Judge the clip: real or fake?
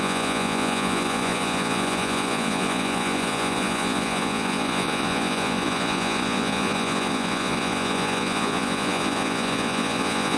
fake